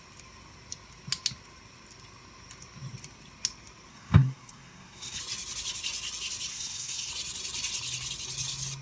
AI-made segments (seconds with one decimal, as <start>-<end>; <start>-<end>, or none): 3.9-5.2; 6.5-7.1